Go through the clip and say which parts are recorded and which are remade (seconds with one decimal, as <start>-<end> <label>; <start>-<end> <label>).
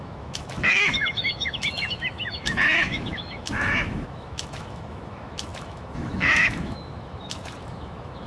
0.0-8.3 remade